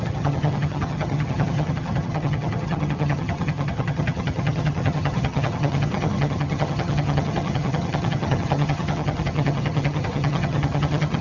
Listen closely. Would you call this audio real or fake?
fake